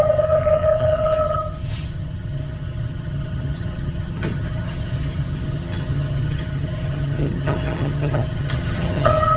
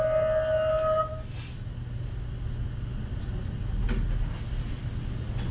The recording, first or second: second